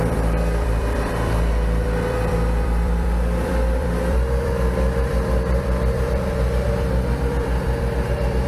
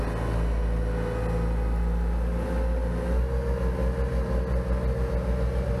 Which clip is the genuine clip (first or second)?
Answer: second